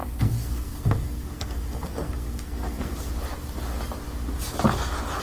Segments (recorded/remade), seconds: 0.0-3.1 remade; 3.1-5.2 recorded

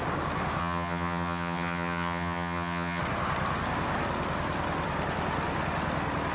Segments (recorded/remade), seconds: 0.0-0.6 recorded; 0.6-3.0 remade; 3.0-6.3 recorded

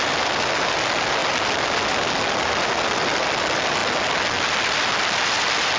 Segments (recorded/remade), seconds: 0.0-5.8 recorded

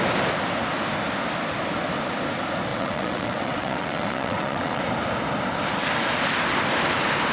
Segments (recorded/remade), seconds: 0.0-2.7 recorded; 2.7-4.8 remade; 4.8-7.3 recorded

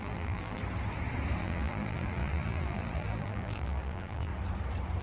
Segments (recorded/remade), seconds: 0.0-0.6 remade; 0.6-1.4 recorded; 1.4-4.3 remade; 4.3-5.0 recorded

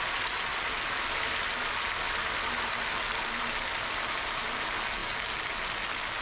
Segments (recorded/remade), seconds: 0.0-6.2 recorded

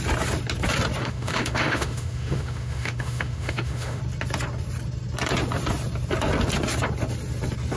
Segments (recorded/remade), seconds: 0.0-1.0 recorded; 1.0-4.0 remade; 4.0-7.8 recorded